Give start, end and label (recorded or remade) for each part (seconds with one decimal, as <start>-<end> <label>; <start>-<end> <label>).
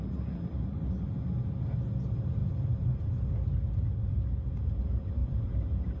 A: 0.0-5.2 recorded; 5.2-6.0 remade